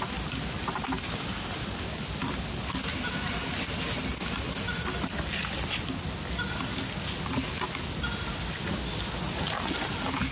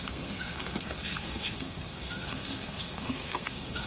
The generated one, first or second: second